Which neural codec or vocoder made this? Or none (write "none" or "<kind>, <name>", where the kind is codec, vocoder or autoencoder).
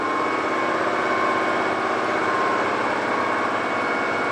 none